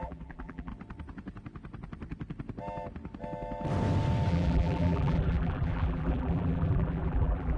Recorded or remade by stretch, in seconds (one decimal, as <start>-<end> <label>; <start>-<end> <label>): 0.0-0.7 remade; 0.7-4.3 recorded; 4.3-7.6 remade